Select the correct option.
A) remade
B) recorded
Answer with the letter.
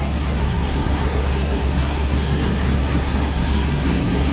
A